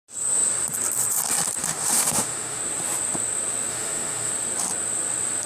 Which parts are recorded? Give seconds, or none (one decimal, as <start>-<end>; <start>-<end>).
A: 0.0-1.6; 2.6-3.7; 4.3-5.5